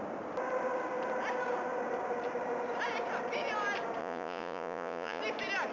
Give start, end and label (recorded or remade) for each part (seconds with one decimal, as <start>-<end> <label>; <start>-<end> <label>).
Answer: 0.0-4.0 recorded; 4.0-5.2 remade; 5.2-5.7 recorded